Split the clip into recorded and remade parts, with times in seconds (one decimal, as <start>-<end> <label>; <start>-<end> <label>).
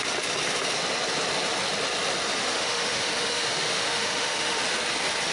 0.0-2.4 recorded; 2.4-4.6 remade; 4.6-5.3 recorded